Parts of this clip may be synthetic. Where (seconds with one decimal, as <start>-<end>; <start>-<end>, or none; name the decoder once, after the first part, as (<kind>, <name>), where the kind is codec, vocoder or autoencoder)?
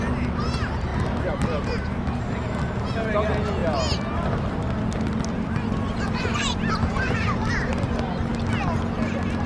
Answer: none